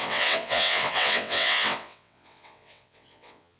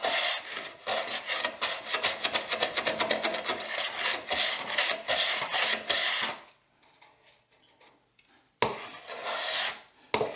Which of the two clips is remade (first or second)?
first